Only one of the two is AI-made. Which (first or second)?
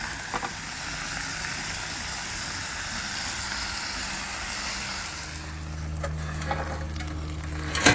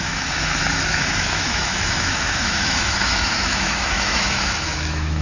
second